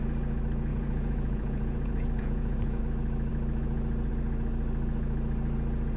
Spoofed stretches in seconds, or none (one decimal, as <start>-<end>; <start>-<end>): 0.7-2.8

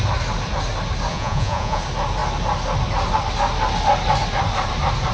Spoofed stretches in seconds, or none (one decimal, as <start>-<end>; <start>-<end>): 1.1-1.8

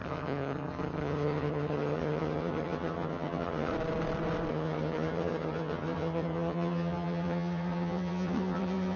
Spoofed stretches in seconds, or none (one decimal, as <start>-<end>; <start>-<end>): 0.0-3.7; 4.5-9.0